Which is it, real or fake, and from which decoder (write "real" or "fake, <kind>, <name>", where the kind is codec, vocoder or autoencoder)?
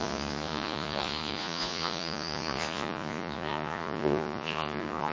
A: fake, vocoder, Vocos